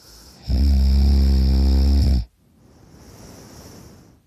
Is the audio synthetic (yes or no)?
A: no